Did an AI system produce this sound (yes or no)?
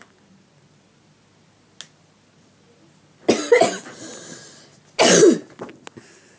no